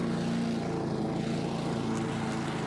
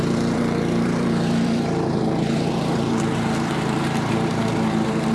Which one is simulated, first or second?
second